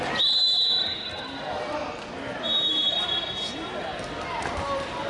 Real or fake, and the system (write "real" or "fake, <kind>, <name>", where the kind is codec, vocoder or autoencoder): real